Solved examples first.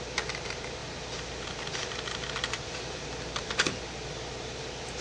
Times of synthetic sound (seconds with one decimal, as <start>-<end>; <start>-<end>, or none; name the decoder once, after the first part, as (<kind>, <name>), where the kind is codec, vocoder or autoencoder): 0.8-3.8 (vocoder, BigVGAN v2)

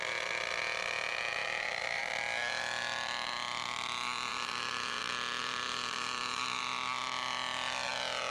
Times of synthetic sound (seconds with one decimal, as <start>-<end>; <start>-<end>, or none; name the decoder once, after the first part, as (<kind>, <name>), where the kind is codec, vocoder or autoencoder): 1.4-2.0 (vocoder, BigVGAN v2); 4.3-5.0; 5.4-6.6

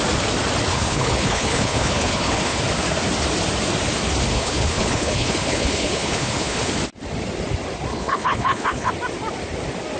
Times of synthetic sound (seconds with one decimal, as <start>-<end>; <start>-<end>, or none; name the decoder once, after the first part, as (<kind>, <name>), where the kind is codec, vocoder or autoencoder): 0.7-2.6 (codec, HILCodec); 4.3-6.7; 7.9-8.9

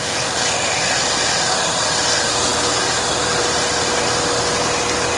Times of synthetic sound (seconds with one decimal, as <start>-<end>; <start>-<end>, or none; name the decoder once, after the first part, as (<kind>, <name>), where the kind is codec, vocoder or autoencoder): none